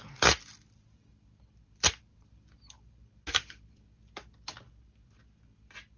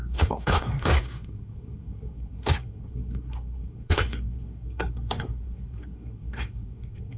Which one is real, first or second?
first